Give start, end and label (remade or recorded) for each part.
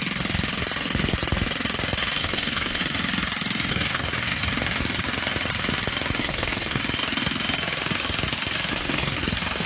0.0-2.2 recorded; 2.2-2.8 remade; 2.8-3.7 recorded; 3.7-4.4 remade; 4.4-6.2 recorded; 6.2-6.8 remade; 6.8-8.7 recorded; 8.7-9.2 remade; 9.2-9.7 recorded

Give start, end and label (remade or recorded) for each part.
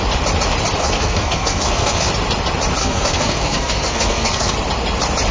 0.0-0.8 recorded; 0.8-2.1 remade; 2.1-2.8 recorded; 2.8-4.5 remade; 4.5-5.3 recorded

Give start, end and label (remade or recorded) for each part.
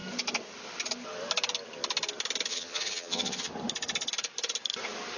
0.0-2.5 recorded; 2.5-3.5 remade; 3.5-5.2 recorded